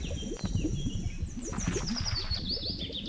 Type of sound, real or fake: real